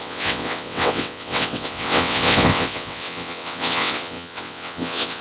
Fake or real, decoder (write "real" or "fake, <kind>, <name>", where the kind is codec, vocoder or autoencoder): fake, vocoder, WaveNeXt